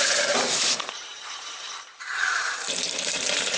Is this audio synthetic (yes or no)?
yes